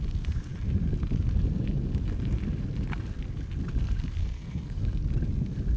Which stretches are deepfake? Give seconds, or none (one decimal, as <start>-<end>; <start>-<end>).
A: 4.2-4.8